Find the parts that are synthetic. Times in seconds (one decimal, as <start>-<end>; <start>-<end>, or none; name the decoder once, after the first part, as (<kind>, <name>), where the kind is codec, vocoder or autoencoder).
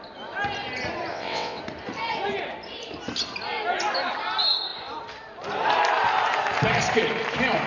1.1-1.6 (vocoder, WaveNeXt)